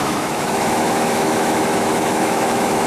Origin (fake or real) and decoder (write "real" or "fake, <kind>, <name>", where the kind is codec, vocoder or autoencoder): fake, autoencoder, DAC-VAE